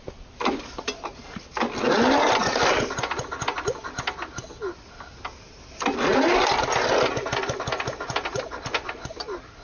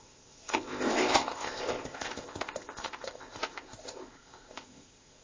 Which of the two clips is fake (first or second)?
second